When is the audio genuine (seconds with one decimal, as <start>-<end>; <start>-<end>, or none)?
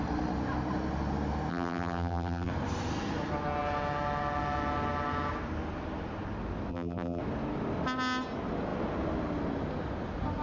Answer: 0.0-1.5; 2.5-6.7; 7.2-10.4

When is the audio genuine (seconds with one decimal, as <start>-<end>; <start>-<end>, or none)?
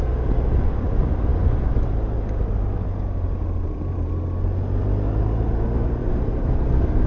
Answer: 0.0-6.0; 6.5-7.1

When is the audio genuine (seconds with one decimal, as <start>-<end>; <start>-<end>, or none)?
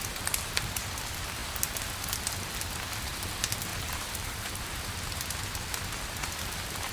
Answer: 0.0-3.7; 4.5-6.9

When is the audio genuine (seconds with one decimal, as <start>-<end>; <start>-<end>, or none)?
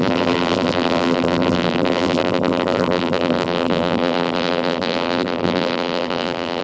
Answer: none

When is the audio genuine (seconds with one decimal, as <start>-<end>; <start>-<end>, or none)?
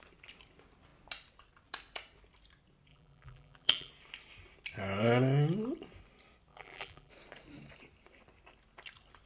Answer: 0.0-2.9; 3.9-6.5; 7.1-9.3